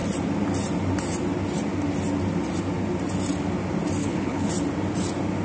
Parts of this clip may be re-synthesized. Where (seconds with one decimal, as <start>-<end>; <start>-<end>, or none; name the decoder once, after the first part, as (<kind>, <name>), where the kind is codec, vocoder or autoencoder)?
4.0-4.5 (codec, HILCodec)